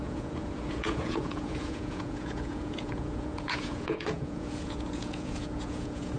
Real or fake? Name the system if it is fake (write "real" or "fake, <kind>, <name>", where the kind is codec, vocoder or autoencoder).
fake, vocoder, Vocos